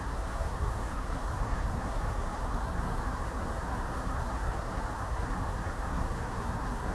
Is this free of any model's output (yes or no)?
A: no